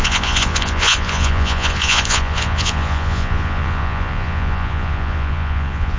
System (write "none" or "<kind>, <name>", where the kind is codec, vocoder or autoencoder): vocoder, Vocos